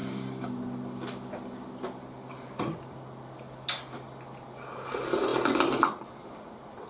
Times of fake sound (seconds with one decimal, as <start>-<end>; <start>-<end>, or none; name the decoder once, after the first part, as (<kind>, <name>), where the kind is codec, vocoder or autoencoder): 0.0-0.5 (codec, DAC)